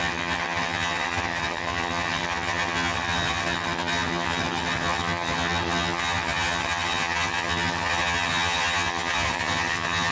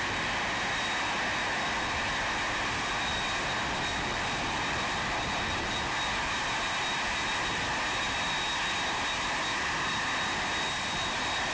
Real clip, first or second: second